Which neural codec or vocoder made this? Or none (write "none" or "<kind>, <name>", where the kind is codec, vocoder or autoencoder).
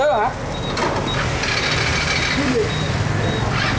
none